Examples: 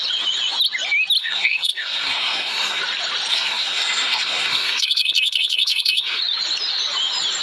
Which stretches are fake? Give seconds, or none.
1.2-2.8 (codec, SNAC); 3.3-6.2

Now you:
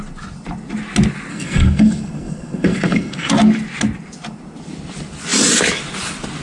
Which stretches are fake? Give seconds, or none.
1.3-3.3 (codec, SNAC)

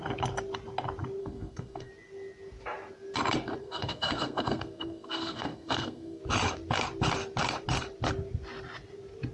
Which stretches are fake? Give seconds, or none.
1.2-1.9 (codec, SNAC); 3.6-6.2

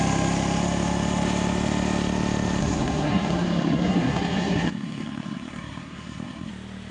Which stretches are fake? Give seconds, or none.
2.6-6.5 (codec, SNAC)

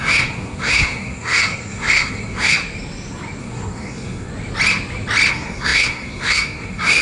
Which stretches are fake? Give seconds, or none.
0.0-2.6 (codec, SNAC); 3.4-4.3; 5.3-7.0